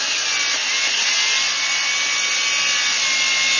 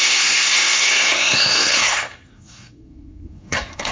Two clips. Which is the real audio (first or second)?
first